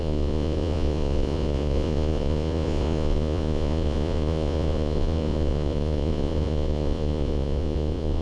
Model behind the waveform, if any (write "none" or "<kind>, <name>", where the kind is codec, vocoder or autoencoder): vocoder, Vocos